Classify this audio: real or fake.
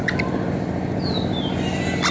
real